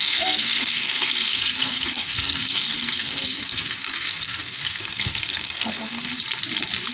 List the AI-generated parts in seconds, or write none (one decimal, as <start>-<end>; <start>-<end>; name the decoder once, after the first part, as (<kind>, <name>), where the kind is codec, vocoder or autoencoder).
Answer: 0.0-6.1 (codec, SNAC)

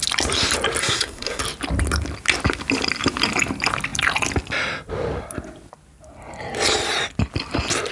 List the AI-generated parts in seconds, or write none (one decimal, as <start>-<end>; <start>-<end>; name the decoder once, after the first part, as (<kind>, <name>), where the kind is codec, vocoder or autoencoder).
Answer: 0.8-1.4 (codec, SNAC)

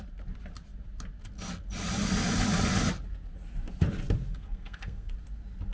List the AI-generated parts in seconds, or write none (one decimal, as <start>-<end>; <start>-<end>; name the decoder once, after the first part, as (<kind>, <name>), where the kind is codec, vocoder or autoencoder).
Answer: 4.3-5.1 (codec, SNAC)

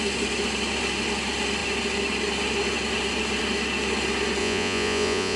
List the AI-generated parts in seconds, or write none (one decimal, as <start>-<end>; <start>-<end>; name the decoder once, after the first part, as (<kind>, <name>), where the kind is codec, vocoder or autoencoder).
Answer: 4.4-5.4 (vocoder, Vocos)

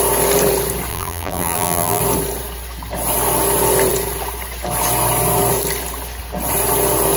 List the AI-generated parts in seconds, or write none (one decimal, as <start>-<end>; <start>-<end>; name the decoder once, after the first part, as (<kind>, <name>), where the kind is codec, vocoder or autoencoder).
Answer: 0.9-2.0 (vocoder, BigVGAN v2)